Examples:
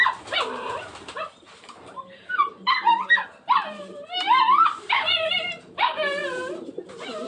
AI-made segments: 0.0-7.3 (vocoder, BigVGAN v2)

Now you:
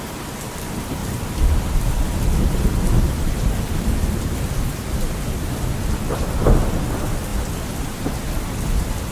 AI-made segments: 1.0-5.7 (vocoder, BigVGAN v2)

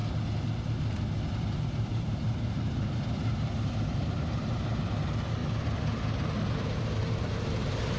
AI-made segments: 1.4-5.4 (vocoder, BigVGAN v2); 6.5-8.0

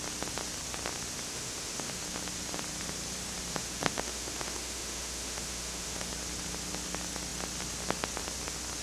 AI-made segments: 1.3-2.0 (autoencoder, DAC-VAE); 3.5-6.1

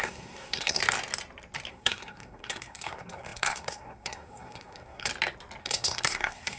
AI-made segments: 0.0-0.8 (codec, SNAC); 1.7-5.1; 5.6-6.6

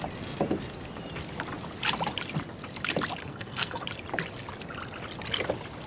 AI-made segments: 3.2-3.8 (codec, SNAC)

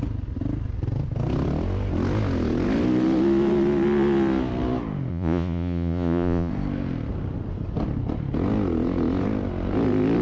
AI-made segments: 5.1-6.5 (vocoder, Vocos)

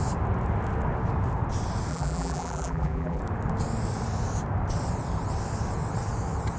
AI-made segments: 1.9-3.2 (vocoder, BigVGAN v2)